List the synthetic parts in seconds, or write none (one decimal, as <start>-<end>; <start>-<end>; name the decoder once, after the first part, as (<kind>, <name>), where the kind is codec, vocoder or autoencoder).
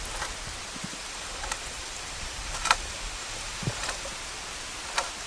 0.9-4.1 (vocoder, BigVGAN v2)